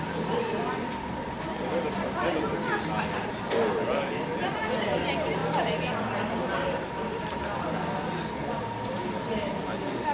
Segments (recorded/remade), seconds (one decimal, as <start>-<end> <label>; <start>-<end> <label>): 0.0-10.1 recorded

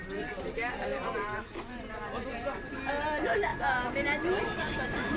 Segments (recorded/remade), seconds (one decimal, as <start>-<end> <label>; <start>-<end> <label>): 0.0-3.5 remade; 3.5-4.4 recorded; 4.4-5.2 remade

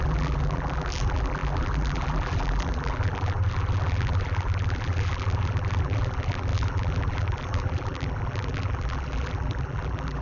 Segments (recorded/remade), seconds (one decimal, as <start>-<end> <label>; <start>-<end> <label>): 0.0-10.2 remade

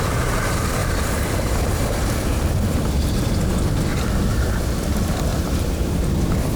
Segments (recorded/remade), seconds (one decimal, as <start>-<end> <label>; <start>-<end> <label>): 0.0-0.8 recorded; 0.8-2.5 remade; 2.5-3.9 recorded; 3.9-4.6 remade; 4.6-5.3 recorded; 5.3-6.0 remade; 6.0-6.6 recorded

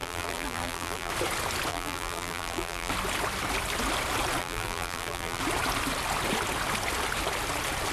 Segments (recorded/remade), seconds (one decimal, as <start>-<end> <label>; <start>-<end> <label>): 0.0-1.1 remade; 1.1-1.7 recorded; 1.7-2.9 remade; 2.9-4.4 recorded; 4.4-5.4 remade; 5.4-7.9 recorded

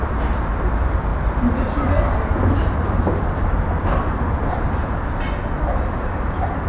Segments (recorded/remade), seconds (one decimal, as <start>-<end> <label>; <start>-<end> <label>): 0.0-1.1 recorded; 1.1-4.6 remade; 4.6-6.7 recorded